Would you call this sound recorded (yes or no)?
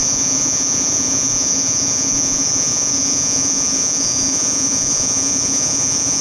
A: no